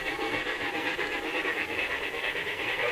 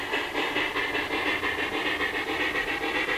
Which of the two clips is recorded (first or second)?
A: second